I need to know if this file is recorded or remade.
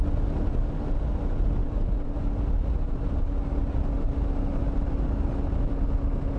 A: recorded